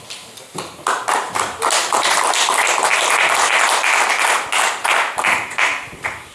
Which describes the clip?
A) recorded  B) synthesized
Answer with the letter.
A